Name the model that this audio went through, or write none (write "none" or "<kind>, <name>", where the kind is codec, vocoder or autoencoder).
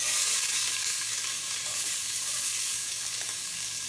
codec, DAC